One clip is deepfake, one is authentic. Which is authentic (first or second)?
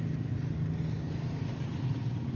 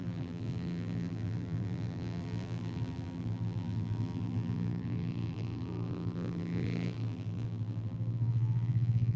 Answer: first